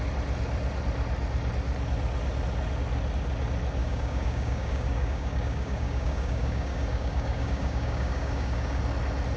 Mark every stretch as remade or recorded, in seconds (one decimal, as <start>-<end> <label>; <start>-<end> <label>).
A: 0.0-3.8 recorded; 3.8-8.8 remade; 8.8-9.4 recorded